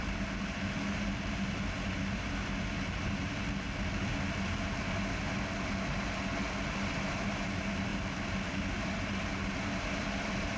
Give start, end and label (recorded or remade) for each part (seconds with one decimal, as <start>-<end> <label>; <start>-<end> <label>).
0.0-7.9 recorded; 7.9-9.3 remade; 9.3-10.6 recorded